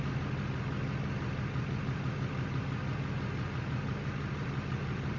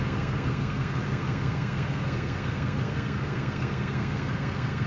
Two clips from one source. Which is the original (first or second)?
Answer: first